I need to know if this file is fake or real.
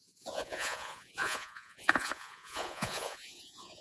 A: fake